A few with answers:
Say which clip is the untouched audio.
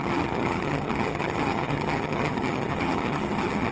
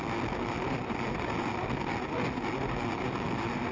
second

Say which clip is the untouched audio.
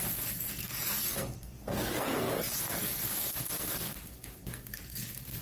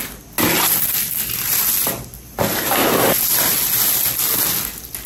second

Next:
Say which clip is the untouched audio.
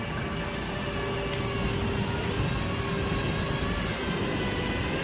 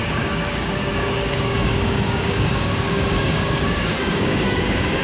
first